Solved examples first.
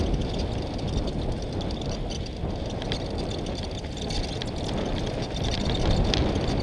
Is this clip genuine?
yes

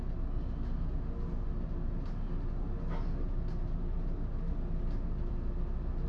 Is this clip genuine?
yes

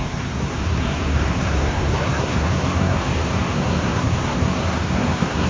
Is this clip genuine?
no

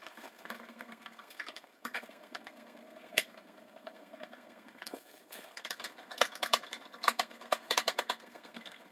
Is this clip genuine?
no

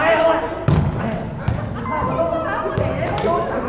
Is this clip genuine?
yes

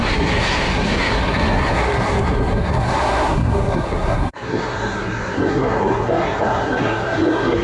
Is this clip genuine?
no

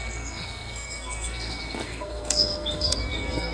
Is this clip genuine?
no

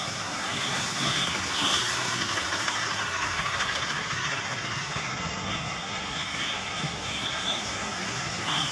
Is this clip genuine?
no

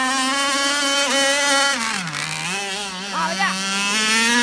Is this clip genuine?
yes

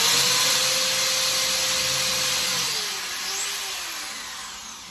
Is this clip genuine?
yes